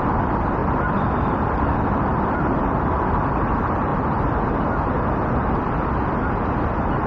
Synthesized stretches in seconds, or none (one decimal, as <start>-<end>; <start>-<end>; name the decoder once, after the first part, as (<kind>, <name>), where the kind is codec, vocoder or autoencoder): none